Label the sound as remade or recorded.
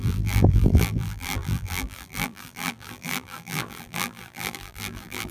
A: remade